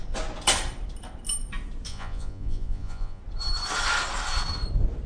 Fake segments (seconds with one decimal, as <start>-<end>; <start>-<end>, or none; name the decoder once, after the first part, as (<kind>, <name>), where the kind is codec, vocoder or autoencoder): 1.9-3.2 (vocoder, Vocos)